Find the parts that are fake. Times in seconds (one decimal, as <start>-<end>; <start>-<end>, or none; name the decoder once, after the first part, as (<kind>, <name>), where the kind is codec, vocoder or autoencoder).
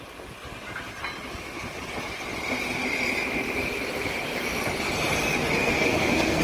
5.6-6.4 (codec, SNAC)